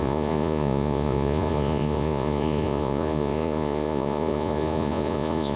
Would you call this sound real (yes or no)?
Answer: no